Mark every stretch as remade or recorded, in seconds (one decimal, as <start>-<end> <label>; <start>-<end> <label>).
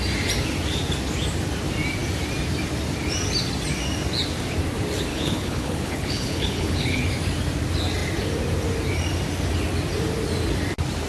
0.0-5.1 recorded; 5.1-7.0 remade; 7.0-11.1 recorded